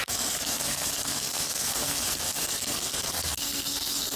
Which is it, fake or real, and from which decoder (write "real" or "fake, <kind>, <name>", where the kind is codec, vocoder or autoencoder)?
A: fake, codec, SNAC